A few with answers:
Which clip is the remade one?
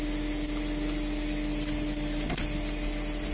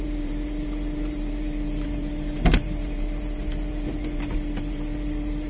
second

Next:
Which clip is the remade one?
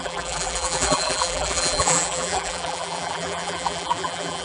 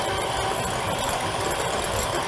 first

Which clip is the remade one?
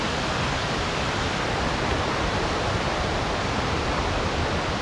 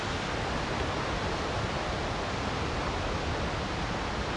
first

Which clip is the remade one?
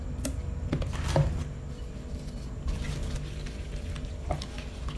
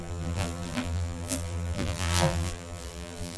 second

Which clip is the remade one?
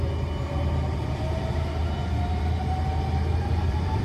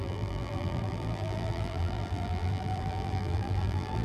second